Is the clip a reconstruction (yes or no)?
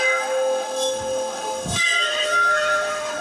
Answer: yes